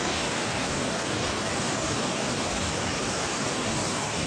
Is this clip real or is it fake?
fake